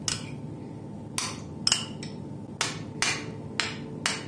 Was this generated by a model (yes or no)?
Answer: no